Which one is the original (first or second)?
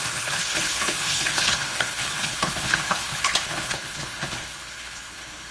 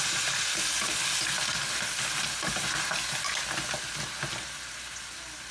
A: second